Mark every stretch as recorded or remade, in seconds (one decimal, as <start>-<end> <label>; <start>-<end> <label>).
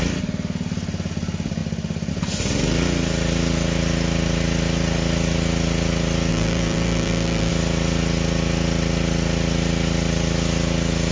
0.0-6.3 recorded; 6.3-7.5 remade; 7.5-11.1 recorded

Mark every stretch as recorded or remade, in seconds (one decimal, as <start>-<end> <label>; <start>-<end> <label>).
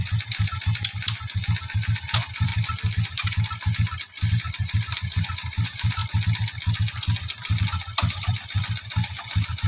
0.0-0.8 remade; 0.8-2.0 recorded; 2.0-2.5 remade; 2.5-4.3 recorded; 4.3-6.0 remade; 6.0-7.6 recorded; 7.6-9.7 remade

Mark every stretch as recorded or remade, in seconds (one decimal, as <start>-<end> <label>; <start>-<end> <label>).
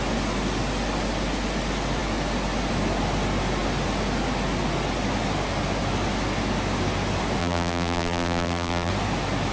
0.0-7.4 recorded; 7.4-8.9 remade; 8.9-9.5 recorded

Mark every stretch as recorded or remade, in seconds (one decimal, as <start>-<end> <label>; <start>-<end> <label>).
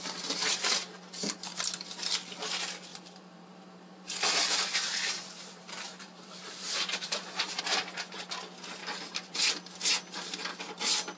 0.0-2.9 recorded; 2.9-7.6 remade; 7.6-8.8 recorded; 8.8-9.6 remade; 9.6-11.2 recorded